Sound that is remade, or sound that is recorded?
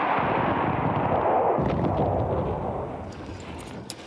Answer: recorded